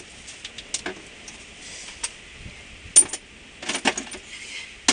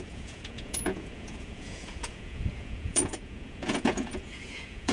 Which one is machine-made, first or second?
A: second